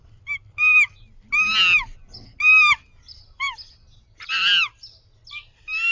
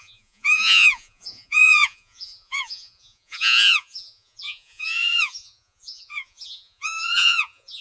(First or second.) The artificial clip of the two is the second